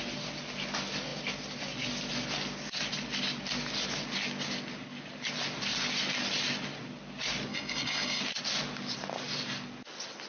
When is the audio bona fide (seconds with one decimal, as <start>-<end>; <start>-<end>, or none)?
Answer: 0.0-7.5; 8.2-10.3